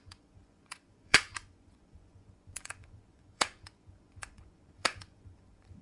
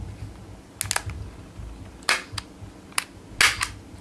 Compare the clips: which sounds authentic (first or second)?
second